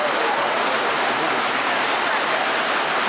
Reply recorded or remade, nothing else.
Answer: recorded